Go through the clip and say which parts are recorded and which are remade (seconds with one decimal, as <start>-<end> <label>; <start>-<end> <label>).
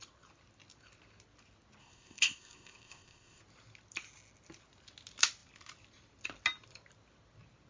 0.0-1.8 recorded; 1.8-3.4 remade; 3.4-7.7 recorded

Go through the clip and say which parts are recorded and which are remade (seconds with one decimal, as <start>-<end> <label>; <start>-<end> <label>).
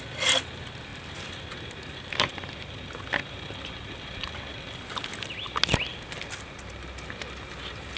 0.0-8.0 recorded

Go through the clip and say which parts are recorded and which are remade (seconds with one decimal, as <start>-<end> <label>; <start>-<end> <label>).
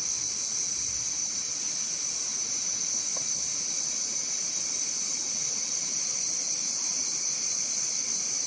0.0-8.5 recorded